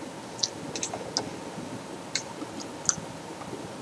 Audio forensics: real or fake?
real